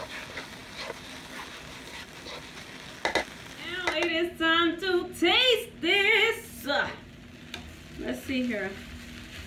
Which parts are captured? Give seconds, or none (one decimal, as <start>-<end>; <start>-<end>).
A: 0.0-9.5